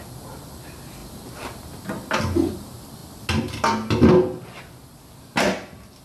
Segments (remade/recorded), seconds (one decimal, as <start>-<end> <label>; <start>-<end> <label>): 0.0-6.0 recorded